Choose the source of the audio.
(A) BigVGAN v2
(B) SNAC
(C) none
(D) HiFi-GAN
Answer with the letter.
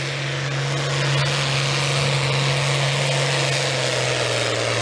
C